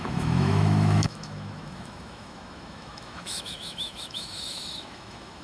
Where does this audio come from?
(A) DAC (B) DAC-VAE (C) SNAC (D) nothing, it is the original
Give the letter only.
B